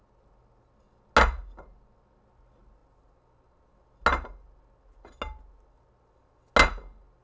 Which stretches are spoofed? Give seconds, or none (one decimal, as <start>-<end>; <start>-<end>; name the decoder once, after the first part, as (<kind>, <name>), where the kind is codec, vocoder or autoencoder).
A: none